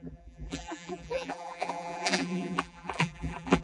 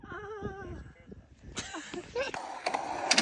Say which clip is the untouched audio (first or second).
second